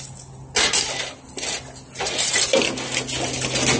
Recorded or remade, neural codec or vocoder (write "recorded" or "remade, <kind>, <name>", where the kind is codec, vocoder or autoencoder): recorded